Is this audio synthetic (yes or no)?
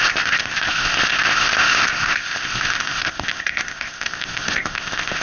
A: yes